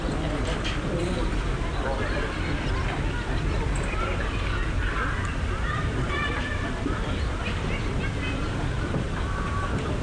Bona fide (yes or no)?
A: no